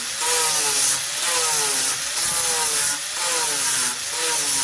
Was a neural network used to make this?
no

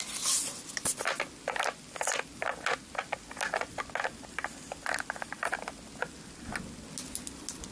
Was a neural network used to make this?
no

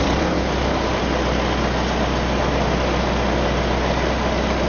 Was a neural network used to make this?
no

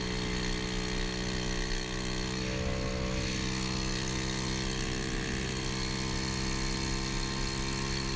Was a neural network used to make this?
no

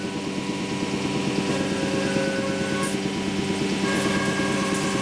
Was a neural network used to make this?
no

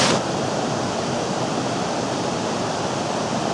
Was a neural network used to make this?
no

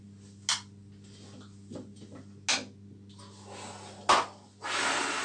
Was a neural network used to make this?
no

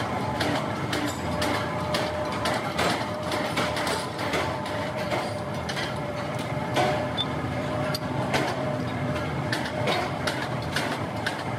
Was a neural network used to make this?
yes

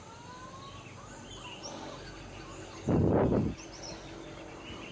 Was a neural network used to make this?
no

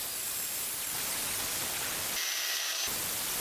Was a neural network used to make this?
no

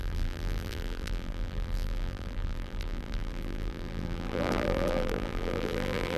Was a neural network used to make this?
yes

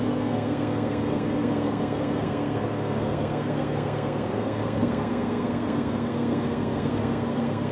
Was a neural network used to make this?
yes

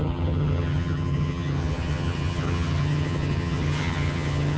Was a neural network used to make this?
yes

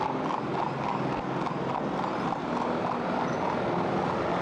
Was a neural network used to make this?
no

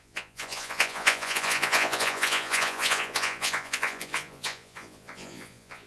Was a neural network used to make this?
yes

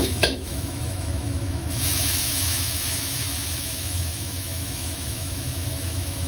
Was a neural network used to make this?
yes